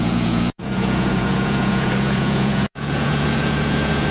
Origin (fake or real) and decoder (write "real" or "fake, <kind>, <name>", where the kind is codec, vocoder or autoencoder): fake, vocoder, Vocos